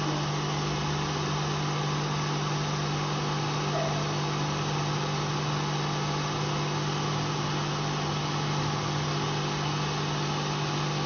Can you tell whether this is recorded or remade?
recorded